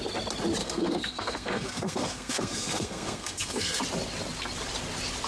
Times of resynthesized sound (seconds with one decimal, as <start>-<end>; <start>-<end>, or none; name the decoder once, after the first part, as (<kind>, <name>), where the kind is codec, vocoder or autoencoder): 0.6-3.8 (codec, SNAC)

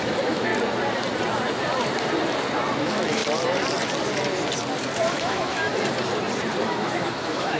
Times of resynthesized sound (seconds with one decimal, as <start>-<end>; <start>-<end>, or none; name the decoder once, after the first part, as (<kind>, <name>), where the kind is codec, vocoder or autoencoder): 0.0-0.5 (autoencoder, DAC-VAE); 2.8-3.2; 5.1-5.7; 6.6-7.6

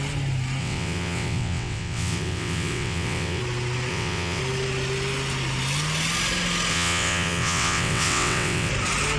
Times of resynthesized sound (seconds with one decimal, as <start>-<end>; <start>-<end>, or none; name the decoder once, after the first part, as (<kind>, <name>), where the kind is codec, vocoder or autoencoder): 0.6-3.4 (vocoder, WaveNeXt); 3.9-4.4; 6.7-8.7

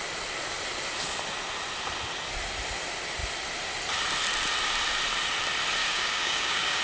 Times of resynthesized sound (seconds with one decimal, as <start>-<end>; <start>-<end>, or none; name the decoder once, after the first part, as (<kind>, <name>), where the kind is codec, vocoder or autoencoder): 5.8-6.8 (codec, DAC)

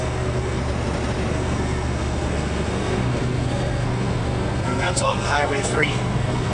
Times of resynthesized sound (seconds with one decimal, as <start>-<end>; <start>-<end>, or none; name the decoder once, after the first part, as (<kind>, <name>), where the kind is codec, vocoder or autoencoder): 0.0-0.6 (codec, SNAC); 1.3-6.5

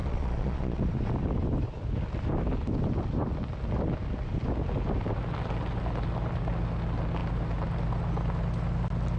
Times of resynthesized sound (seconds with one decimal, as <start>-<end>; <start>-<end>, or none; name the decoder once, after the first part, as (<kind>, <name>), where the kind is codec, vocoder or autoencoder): 0.0-0.8 (vocoder, Vocos)

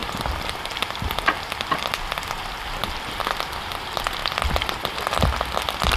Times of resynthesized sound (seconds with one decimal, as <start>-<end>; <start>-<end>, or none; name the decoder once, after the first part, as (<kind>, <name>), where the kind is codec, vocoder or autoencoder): 0.0-3.6 (vocoder, BigVGAN v2)

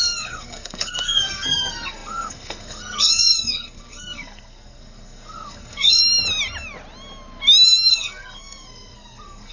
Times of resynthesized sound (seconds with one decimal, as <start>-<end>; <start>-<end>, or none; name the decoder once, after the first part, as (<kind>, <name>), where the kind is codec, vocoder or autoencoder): 0.0-6.0 (codec, SNAC); 7.9-9.5